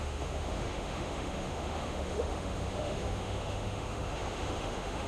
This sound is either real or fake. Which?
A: fake